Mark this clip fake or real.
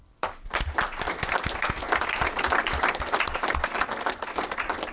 real